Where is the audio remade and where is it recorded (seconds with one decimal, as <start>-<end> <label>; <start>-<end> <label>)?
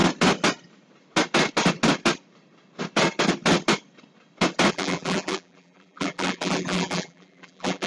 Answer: 0.0-4.7 recorded; 4.7-7.9 remade